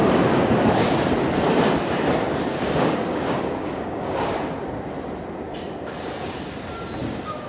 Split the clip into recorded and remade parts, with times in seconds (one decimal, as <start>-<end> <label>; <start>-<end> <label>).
0.0-0.7 remade; 0.7-2.5 recorded; 2.5-4.5 remade; 4.5-7.0 recorded; 7.0-7.5 remade